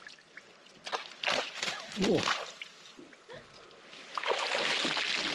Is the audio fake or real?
real